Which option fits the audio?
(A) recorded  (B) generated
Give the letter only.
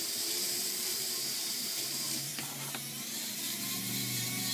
B